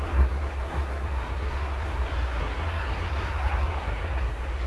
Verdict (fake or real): fake